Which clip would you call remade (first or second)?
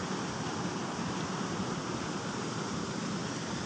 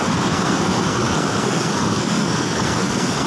second